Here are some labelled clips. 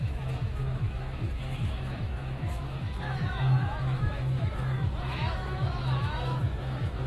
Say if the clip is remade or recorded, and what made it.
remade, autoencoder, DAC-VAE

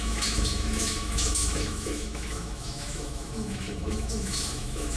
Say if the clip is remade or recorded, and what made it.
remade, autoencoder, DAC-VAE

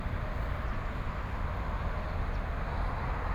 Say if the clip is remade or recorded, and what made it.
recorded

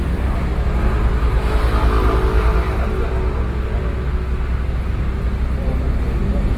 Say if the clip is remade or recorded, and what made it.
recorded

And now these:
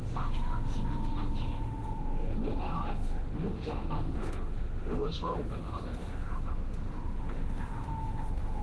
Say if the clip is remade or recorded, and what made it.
remade, autoencoder, DAC-VAE